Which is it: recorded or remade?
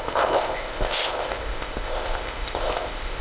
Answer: remade